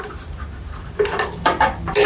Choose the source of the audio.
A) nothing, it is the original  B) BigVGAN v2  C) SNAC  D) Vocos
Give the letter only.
A